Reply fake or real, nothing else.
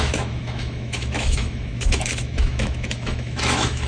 fake